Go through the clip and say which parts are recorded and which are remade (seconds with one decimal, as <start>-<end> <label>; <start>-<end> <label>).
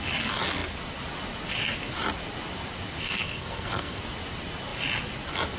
0.0-3.0 recorded; 3.0-4.0 remade; 4.0-5.6 recorded